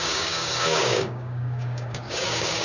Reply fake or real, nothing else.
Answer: fake